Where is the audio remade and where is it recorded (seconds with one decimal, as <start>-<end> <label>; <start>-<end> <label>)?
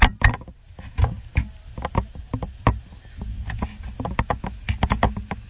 0.0-5.5 recorded